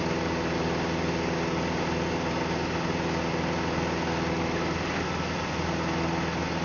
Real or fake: real